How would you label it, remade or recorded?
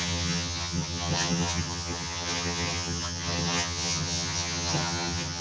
remade